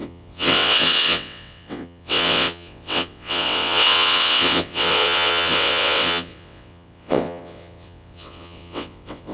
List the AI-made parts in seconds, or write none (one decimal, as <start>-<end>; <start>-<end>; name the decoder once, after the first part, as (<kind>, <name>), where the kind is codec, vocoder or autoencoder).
0.0-9.3 (vocoder, WaveNeXt)